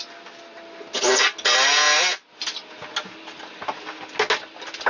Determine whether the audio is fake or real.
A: real